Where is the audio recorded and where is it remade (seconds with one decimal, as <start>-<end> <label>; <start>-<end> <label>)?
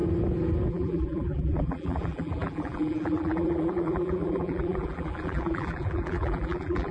0.0-0.7 recorded; 0.7-6.9 remade